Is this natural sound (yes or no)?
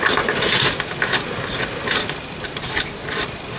yes